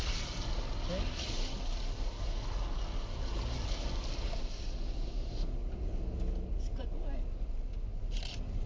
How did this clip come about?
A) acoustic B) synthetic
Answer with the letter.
A